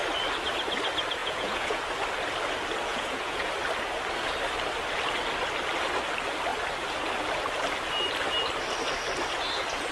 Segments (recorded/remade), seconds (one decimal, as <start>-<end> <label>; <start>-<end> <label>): 0.0-1.2 recorded; 1.2-1.8 remade; 1.8-2.9 recorded; 2.9-3.5 remade; 3.5-9.9 recorded